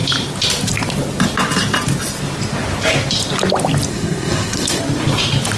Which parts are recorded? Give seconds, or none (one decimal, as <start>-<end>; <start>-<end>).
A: 0.0-3.9; 4.8-5.6